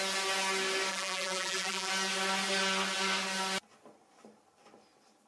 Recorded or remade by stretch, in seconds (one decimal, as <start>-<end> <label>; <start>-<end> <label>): 0.0-0.9 recorded; 0.9-1.9 remade; 1.9-5.3 recorded